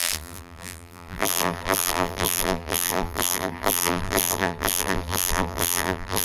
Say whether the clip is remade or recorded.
remade